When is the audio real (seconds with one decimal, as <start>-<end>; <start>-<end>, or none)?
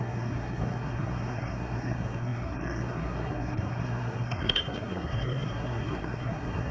none